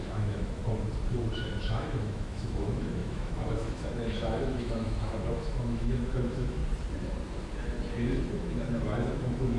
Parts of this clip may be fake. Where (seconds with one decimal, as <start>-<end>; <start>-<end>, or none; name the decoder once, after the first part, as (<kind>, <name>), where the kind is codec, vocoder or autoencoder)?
0.0-0.6 (autoencoder, DAC-VAE); 1.6-6.6; 8.3-9.6